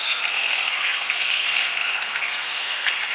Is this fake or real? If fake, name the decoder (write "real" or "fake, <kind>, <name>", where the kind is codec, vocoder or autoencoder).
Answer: fake, codec, SNAC